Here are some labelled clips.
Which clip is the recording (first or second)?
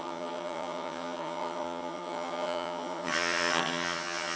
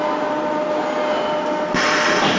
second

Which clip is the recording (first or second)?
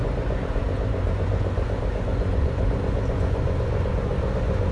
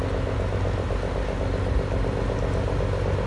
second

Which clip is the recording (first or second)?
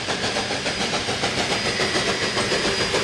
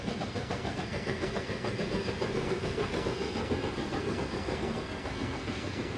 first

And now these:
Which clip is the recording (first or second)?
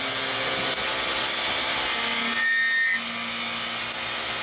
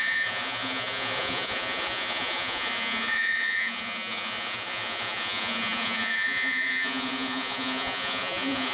first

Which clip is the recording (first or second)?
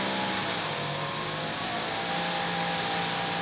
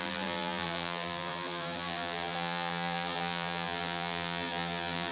first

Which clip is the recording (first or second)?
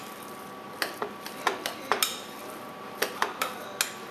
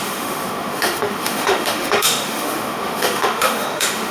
first